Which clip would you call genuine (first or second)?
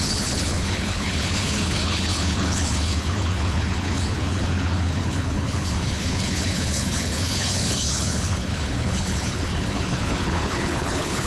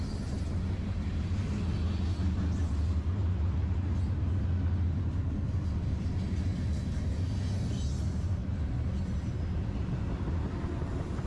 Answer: second